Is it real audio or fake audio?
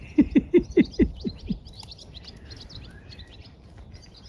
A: real